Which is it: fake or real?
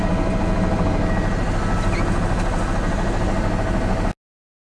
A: real